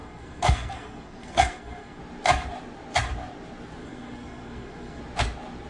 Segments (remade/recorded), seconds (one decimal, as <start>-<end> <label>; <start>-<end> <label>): 0.0-2.0 remade; 2.0-3.8 recorded; 3.8-5.0 remade; 5.0-5.7 recorded

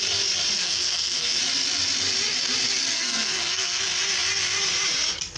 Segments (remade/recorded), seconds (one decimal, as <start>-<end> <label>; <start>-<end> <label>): 0.0-0.6 recorded; 0.6-1.4 remade; 1.4-2.9 recorded; 2.9-3.8 remade; 3.8-5.4 recorded